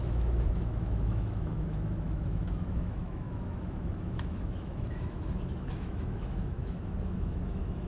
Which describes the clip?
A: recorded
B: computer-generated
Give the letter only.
B